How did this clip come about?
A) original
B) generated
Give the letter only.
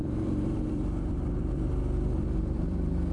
B